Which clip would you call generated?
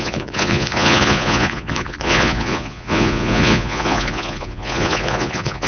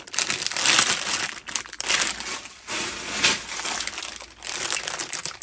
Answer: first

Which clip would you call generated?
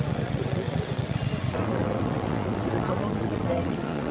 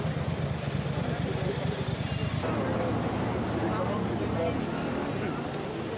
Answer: first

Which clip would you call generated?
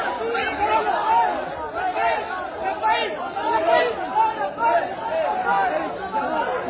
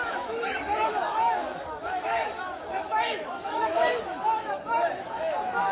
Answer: second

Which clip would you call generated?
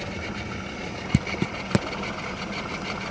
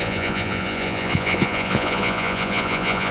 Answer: second